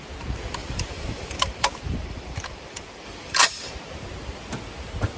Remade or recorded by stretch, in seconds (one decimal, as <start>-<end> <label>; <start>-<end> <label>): 0.0-0.6 recorded; 0.6-3.7 remade; 3.7-5.2 recorded

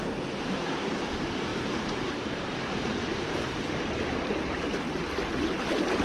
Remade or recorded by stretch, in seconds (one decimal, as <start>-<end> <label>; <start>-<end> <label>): 0.0-1.5 recorded; 1.5-4.8 remade; 4.8-6.0 recorded